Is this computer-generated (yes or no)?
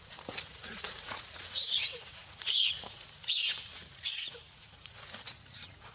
yes